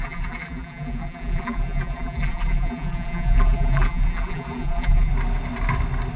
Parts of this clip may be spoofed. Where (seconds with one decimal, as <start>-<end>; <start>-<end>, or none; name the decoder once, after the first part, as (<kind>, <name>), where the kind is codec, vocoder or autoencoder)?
0.0-5.1 (vocoder, BigVGAN v2)